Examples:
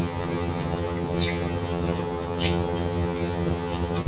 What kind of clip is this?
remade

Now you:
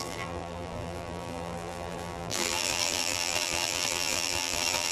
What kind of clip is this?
remade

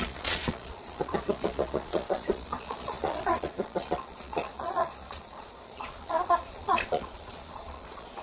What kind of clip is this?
remade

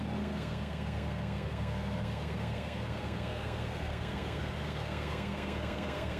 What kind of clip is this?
remade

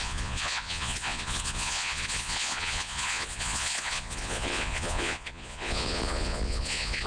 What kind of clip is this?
remade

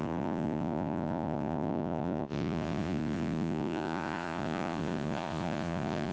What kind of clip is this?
remade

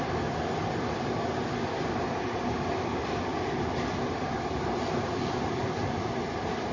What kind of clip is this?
recorded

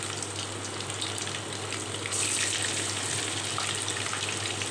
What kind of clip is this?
remade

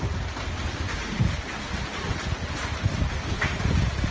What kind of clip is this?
recorded